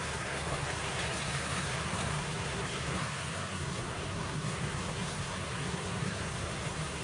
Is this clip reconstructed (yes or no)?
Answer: yes